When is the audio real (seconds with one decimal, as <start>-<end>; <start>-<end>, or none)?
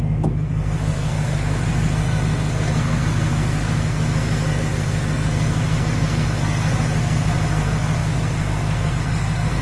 none